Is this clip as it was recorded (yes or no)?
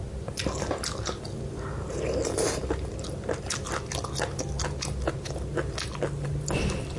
yes